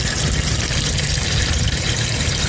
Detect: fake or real fake